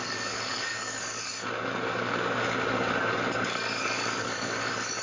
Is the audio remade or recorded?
remade